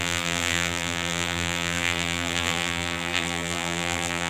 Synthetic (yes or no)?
yes